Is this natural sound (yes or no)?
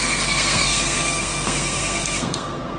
no